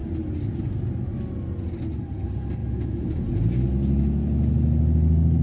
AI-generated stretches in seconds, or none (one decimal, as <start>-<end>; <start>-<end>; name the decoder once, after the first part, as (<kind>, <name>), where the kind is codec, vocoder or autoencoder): 2.6-3.1 (autoencoder, DAC-VAE)